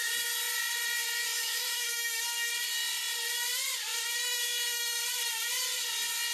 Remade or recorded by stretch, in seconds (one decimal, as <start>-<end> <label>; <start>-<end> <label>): 0.0-1.3 recorded; 1.3-2.2 remade; 2.2-3.9 recorded; 3.9-5.0 remade; 5.0-6.3 recorded